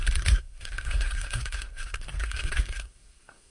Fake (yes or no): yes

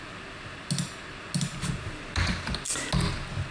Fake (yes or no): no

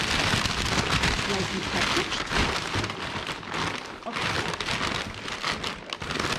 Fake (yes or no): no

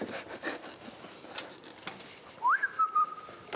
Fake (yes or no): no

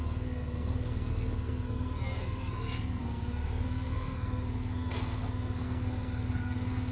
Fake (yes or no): yes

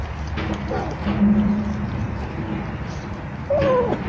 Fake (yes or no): no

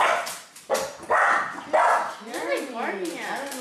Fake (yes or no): no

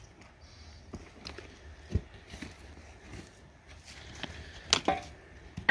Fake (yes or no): no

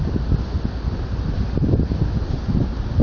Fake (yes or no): no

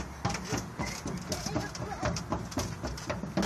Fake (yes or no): no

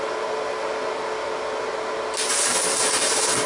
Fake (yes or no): no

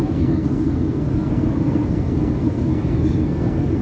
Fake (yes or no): yes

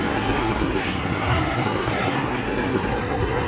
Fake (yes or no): yes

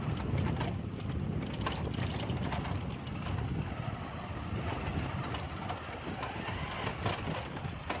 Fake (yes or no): no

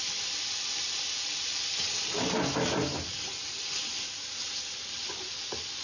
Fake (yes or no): no